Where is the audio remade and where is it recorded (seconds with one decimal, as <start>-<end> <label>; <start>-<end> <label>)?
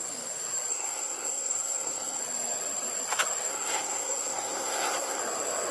0.0-0.7 recorded; 0.7-2.2 remade; 2.2-3.5 recorded; 3.5-5.2 remade; 5.2-5.7 recorded